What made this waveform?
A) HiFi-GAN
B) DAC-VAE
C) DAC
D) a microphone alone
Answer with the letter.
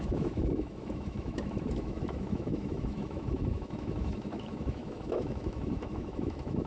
B